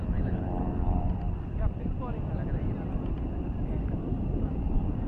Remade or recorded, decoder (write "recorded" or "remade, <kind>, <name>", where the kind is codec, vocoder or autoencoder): remade, vocoder, BigVGAN v2